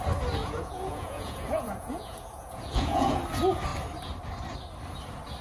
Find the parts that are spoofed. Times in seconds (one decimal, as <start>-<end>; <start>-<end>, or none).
0.4-3.2